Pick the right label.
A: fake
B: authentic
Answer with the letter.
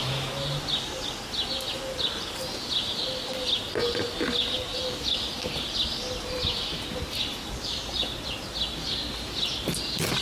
B